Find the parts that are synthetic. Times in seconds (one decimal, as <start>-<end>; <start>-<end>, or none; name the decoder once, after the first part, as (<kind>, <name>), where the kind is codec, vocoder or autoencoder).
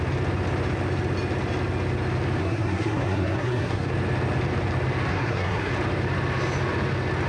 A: 2.4-3.9 (codec, SNAC); 5.1-5.7